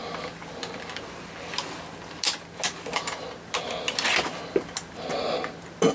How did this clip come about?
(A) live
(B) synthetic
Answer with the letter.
A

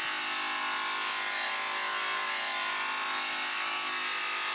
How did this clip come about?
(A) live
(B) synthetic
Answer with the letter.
A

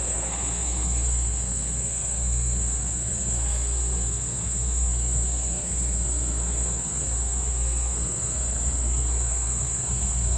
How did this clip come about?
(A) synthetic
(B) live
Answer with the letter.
A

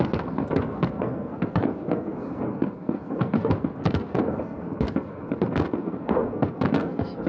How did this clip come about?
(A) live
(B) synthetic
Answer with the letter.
B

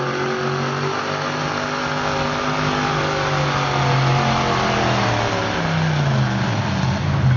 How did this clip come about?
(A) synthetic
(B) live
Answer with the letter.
B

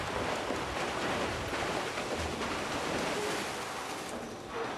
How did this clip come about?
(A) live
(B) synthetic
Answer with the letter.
A